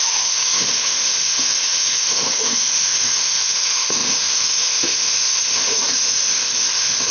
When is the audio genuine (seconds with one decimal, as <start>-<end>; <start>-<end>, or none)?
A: none